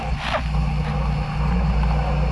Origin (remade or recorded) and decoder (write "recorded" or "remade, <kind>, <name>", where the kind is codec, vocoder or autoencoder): recorded